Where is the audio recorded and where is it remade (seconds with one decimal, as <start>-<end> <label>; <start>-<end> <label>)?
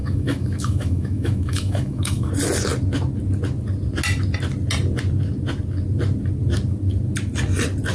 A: 0.0-2.3 remade; 2.3-7.9 recorded